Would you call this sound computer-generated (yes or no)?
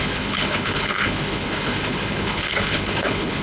yes